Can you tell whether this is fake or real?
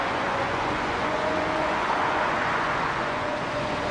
fake